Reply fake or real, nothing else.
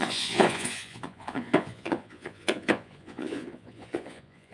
fake